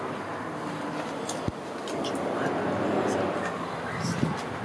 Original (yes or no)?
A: yes